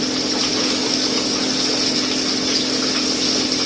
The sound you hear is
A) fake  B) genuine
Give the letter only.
B